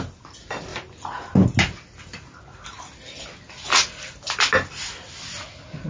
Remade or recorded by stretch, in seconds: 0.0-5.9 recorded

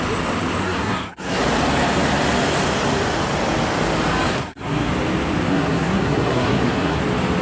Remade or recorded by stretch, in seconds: 0.0-0.6 recorded; 0.6-1.4 remade; 1.4-4.3 recorded; 4.3-4.9 remade; 4.9-5.5 recorded; 5.5-7.0 remade; 7.0-7.4 recorded

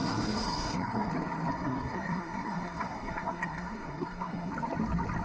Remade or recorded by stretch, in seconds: 0.0-1.1 remade; 1.1-1.5 recorded; 1.5-4.5 remade; 4.5-5.2 recorded